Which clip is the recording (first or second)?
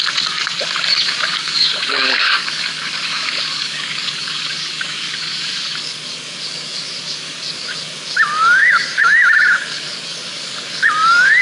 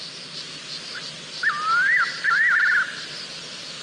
second